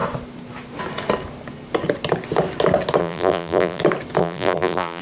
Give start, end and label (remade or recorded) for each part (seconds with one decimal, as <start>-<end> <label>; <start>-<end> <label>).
0.0-3.0 recorded; 3.0-3.8 remade; 3.8-4.2 recorded; 4.2-5.0 remade